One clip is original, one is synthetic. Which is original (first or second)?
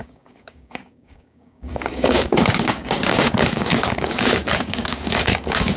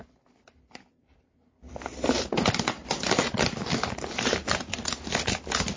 second